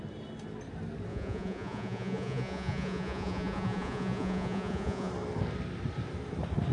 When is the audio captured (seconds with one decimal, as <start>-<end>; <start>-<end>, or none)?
0.0-1.1; 5.1-6.7